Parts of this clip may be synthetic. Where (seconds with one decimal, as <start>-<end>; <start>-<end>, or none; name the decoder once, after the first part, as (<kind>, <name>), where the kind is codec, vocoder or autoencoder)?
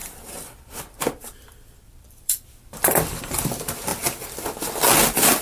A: 0.0-3.2 (vocoder, BigVGAN v2)